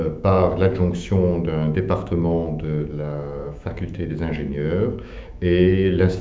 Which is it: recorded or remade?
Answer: remade